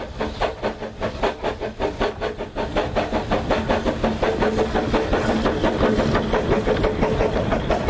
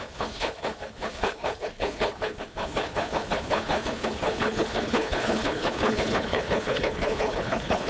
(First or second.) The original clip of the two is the first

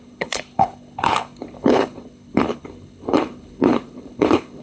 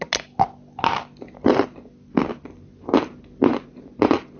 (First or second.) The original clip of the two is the second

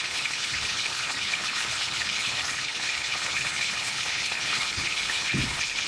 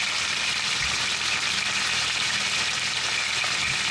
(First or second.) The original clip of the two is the second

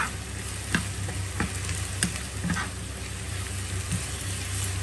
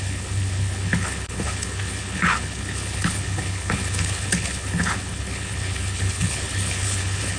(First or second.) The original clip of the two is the first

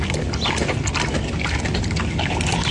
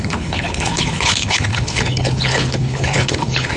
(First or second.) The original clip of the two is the first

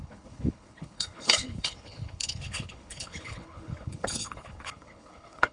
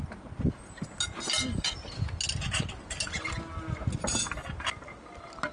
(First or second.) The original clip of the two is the second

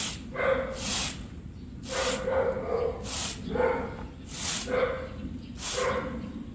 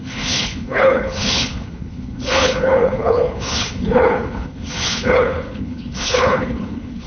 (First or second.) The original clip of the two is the first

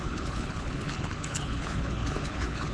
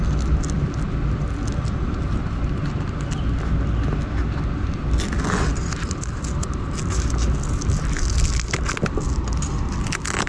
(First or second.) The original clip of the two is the second